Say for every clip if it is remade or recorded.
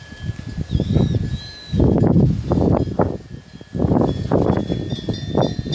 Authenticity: recorded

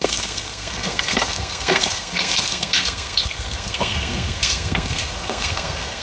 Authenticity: remade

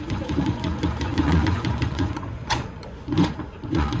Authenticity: remade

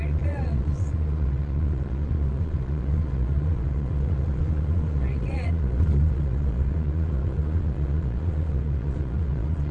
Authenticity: remade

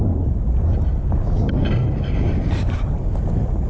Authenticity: recorded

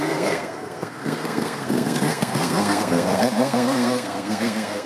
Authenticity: remade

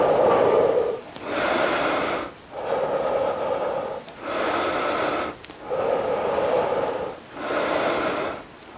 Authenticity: recorded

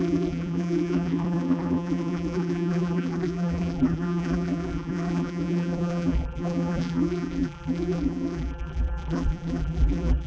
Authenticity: remade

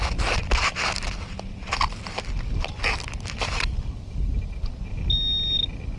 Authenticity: recorded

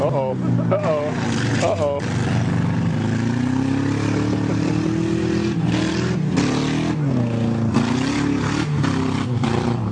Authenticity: recorded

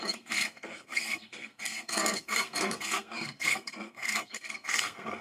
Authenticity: remade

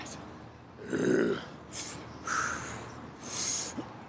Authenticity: recorded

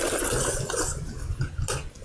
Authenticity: recorded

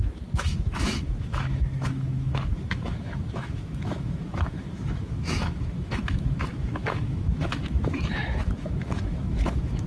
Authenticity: remade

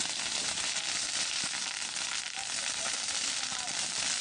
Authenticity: recorded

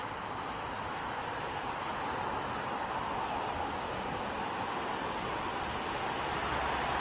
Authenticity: recorded